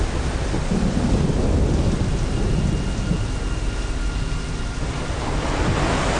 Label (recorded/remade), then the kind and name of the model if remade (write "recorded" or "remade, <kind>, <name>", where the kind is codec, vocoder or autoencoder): recorded